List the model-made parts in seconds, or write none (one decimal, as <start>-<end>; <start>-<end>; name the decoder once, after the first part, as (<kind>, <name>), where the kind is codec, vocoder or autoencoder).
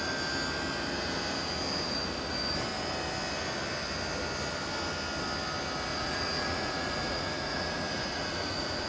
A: 5.9-8.9 (vocoder, Vocos)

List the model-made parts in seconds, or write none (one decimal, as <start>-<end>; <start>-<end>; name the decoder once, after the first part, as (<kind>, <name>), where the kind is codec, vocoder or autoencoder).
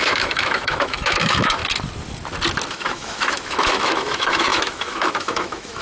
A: 0.0-1.6 (autoencoder, DAC-VAE); 2.7-5.8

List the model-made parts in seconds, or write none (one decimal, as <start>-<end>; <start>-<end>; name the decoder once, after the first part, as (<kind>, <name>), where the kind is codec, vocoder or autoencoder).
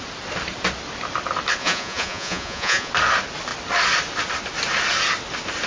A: 1.6-2.9 (vocoder, Vocos)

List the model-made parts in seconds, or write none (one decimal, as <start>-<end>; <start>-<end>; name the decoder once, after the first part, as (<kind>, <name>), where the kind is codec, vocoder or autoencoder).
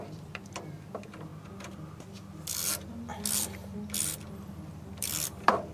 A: 0.0-1.3 (vocoder, BigVGAN v2); 4.7-5.7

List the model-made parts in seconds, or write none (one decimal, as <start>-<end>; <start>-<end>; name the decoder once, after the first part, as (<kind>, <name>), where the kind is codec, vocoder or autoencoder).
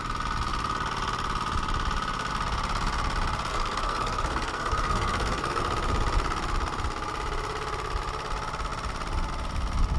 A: 3.5-5.6 (codec, SNAC)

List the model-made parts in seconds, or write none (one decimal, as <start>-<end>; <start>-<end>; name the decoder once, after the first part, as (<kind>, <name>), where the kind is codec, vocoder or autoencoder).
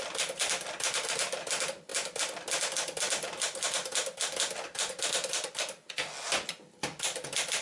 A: none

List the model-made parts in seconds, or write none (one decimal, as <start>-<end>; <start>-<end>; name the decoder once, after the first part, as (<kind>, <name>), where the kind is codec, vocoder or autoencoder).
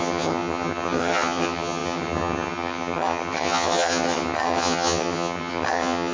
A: 0.0-6.1 (vocoder, HiFi-GAN)